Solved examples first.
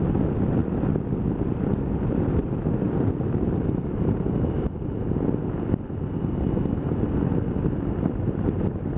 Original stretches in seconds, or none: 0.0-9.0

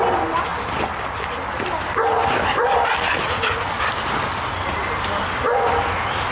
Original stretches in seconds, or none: 0.0-6.3

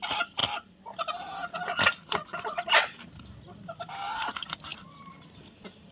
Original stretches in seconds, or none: 0.0-5.9

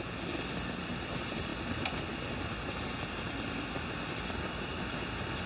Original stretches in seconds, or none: 0.0-5.5

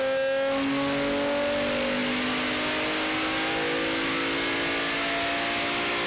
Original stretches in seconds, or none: 0.0-6.1